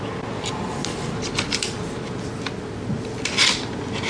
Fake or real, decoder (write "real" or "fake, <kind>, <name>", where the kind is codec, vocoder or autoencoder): real